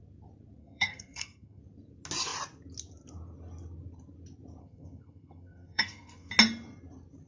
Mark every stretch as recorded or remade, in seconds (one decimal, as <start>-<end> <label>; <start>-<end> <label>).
0.0-0.6 recorded; 0.6-1.6 remade; 1.6-4.6 recorded; 4.6-6.3 remade; 6.3-7.3 recorded